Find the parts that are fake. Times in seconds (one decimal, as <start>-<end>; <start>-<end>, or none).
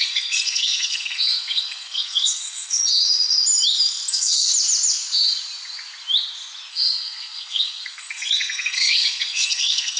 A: 0.0-2.8; 4.1-4.5; 6.7-10.0